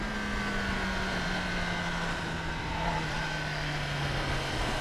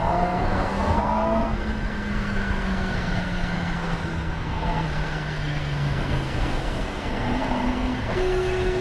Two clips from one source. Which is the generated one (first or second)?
second